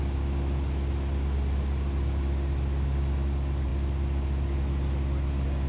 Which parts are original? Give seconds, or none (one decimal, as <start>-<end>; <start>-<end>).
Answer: 0.0-5.7